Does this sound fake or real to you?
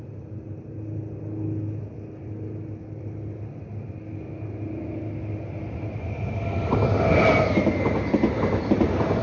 real